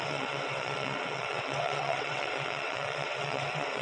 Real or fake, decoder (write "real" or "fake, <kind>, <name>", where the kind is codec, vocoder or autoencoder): fake, vocoder, WaveNeXt